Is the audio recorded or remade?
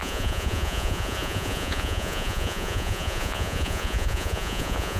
remade